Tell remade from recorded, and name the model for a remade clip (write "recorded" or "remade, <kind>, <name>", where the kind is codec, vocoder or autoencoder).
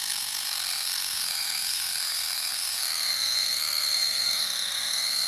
remade, codec, SNAC